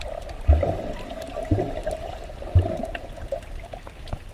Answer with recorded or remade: recorded